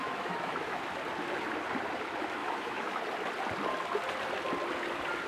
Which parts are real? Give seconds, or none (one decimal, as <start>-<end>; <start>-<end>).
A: 0.8-2.4; 3.0-5.3